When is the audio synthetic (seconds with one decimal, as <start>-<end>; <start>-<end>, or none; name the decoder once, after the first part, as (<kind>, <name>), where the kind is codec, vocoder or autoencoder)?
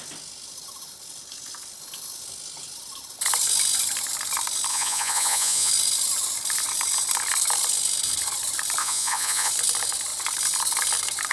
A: 4.7-5.7 (vocoder, Vocos); 8.8-9.5